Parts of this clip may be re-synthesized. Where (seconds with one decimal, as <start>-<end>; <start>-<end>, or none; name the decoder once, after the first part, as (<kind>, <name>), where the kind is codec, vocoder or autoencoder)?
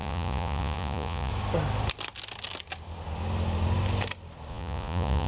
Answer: 0.0-1.3 (vocoder, Vocos); 4.5-5.3